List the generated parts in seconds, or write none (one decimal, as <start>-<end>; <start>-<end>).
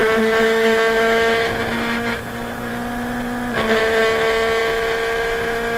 0.0-2.7; 3.8-5.8